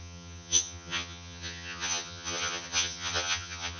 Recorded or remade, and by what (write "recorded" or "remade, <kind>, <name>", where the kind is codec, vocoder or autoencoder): remade, vocoder, HiFi-GAN